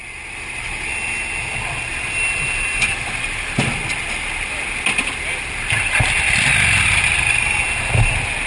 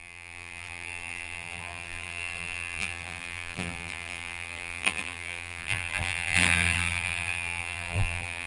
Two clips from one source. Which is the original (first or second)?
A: first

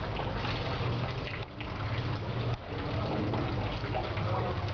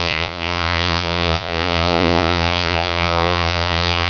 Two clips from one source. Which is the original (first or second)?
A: first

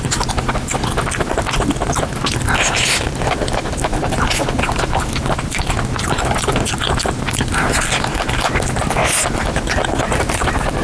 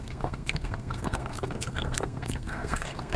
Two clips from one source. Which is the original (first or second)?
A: first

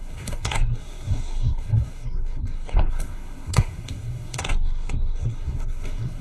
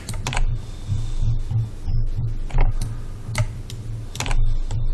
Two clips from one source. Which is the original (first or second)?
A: second